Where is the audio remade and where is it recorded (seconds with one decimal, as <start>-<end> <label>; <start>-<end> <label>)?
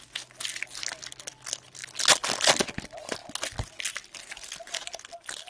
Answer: 0.0-5.5 recorded